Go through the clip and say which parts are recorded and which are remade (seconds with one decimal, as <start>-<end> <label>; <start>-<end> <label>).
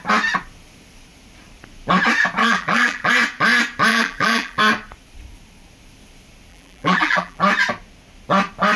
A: 0.0-2.4 recorded; 2.4-3.1 remade; 3.1-3.9 recorded; 3.9-4.6 remade; 4.6-6.5 recorded; 6.5-7.4 remade; 7.4-8.8 recorded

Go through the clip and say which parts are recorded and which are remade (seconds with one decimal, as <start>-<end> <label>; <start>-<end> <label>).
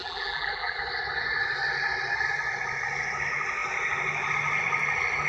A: 0.0-0.8 remade; 0.8-5.3 recorded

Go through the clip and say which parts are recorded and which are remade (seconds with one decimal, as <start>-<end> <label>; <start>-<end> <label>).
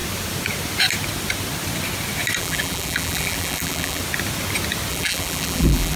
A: 0.0-2.4 recorded; 2.4-4.0 remade; 4.0-4.9 recorded; 4.9-6.0 remade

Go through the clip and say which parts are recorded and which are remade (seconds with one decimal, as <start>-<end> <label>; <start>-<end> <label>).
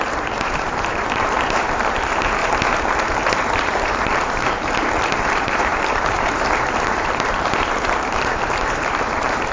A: 0.0-2.4 remade; 2.4-3.3 recorded; 3.3-9.5 remade